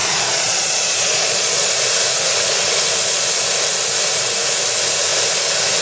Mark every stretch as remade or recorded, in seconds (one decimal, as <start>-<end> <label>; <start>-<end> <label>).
0.0-1.7 remade; 1.7-5.8 recorded